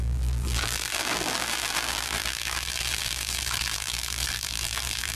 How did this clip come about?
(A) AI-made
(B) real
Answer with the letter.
A